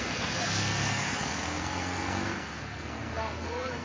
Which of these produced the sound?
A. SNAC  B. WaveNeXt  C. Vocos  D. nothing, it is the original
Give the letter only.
A